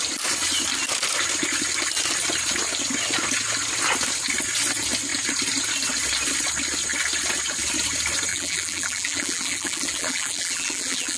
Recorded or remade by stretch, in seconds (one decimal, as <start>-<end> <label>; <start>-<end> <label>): 0.0-8.3 recorded; 8.3-11.2 remade